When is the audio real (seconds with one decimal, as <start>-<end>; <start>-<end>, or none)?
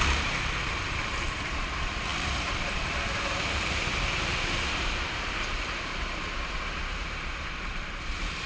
none